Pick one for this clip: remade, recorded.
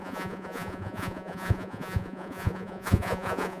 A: remade